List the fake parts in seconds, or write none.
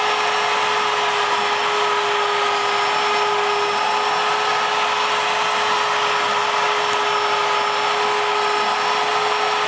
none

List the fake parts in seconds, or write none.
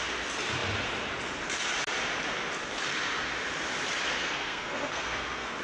4.2-5.6 (codec, SNAC)